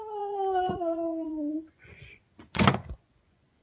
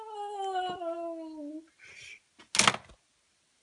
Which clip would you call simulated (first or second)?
first